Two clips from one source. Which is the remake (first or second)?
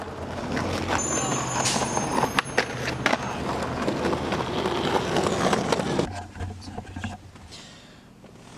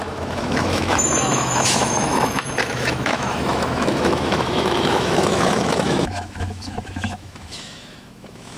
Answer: second